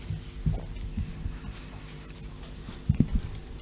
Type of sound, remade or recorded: recorded